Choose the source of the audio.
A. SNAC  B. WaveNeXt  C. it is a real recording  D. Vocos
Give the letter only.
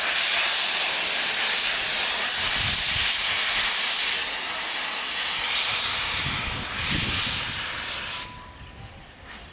C